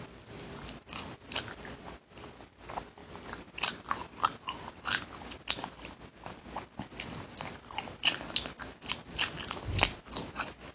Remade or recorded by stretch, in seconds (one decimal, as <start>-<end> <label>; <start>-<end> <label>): 0.0-10.7 recorded